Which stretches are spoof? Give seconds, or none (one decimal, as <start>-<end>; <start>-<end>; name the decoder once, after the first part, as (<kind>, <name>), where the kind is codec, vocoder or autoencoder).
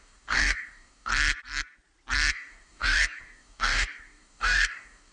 0.0-1.1 (codec, DAC); 2.3-5.1